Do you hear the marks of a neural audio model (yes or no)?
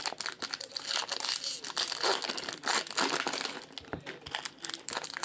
no